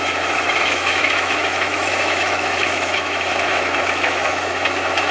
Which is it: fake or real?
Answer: fake